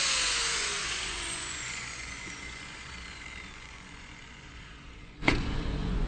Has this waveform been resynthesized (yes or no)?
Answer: yes